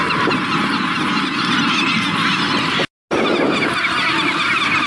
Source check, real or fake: real